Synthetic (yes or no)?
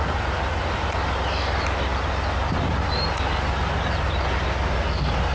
no